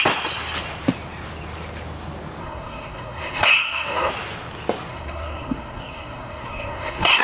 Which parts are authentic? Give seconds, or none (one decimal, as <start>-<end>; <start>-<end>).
0.0-2.4; 4.1-4.9